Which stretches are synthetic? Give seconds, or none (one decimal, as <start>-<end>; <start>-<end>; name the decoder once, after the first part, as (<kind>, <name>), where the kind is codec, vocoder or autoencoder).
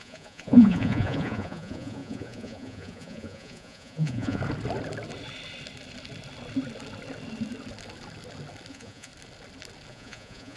0.0-4.4 (vocoder, Vocos); 8.7-9.1; 9.9-10.6